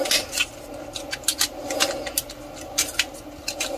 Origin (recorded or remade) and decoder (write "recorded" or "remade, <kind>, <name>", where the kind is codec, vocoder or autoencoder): recorded